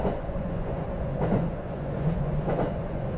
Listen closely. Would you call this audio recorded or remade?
remade